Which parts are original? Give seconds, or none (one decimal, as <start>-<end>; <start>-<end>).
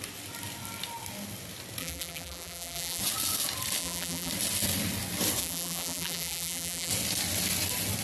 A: 0.0-1.8; 3.0-3.8; 4.3-5.4; 6.9-8.0